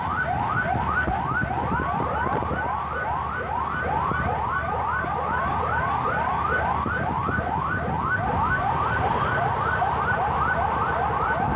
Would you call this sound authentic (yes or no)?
yes